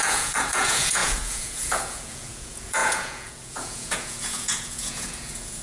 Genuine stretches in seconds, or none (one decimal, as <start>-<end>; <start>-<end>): none